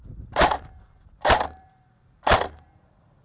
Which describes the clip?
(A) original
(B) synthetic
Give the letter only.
B